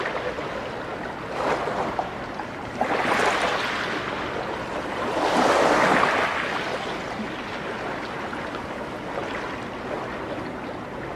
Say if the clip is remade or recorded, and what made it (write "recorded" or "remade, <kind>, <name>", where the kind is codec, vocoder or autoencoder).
recorded